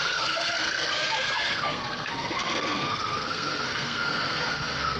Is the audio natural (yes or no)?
no